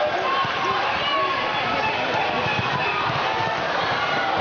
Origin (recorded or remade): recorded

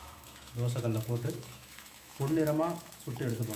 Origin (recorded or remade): remade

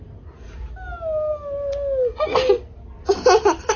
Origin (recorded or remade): recorded